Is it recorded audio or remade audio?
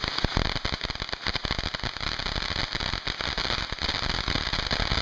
recorded